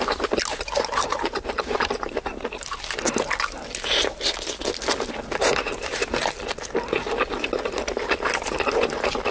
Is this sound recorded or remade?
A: recorded